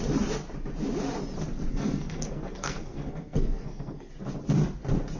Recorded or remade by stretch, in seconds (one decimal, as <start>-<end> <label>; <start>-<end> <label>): 0.0-1.7 recorded; 1.7-4.1 remade; 4.1-5.2 recorded